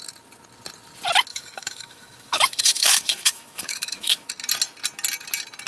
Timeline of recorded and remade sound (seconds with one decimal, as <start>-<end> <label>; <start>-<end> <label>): 0.0-1.3 recorded; 1.3-4.3 remade; 4.3-5.7 recorded